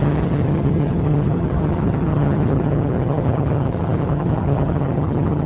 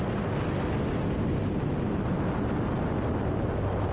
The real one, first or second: second